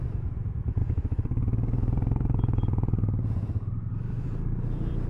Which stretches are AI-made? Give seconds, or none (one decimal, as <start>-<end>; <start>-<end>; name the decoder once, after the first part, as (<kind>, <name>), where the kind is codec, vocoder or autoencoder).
0.8-3.9 (vocoder, BigVGAN v2)